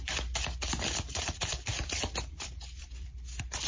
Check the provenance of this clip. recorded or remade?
remade